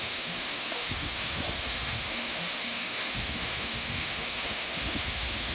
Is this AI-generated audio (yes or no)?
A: yes